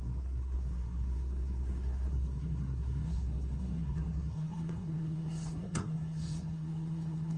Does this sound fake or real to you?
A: fake